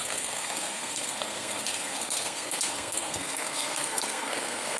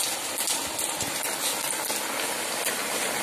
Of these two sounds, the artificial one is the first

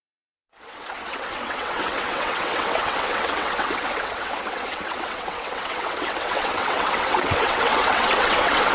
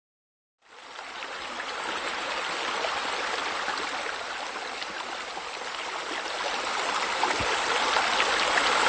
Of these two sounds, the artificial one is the first